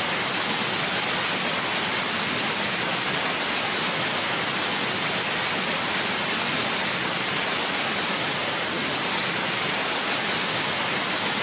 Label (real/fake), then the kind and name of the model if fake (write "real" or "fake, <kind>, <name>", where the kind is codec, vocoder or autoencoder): real